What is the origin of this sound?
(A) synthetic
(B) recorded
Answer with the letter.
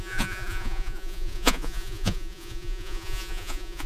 A